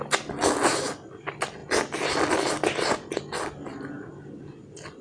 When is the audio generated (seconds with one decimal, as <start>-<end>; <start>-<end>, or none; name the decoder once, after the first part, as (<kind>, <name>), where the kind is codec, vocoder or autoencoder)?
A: none